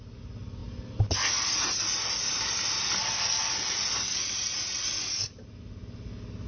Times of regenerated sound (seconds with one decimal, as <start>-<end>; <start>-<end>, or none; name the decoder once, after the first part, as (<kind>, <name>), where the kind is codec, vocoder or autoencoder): none